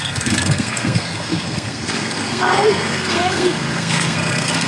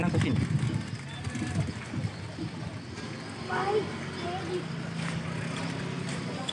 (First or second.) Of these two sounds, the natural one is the second